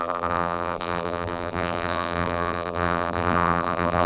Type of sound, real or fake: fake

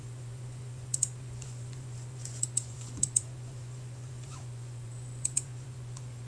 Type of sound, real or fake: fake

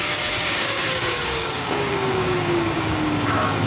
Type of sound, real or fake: fake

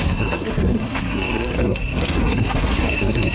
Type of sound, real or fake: fake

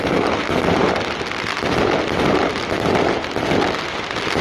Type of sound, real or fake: real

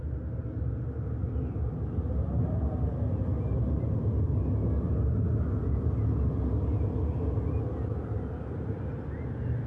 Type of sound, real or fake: real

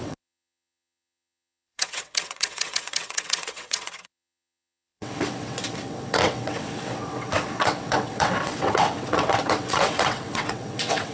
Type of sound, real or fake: fake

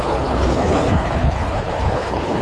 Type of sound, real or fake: fake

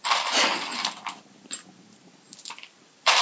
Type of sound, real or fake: real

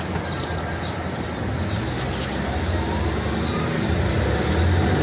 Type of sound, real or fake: real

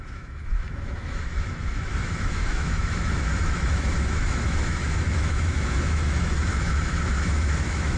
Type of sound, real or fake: fake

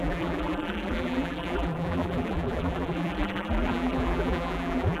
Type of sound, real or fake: fake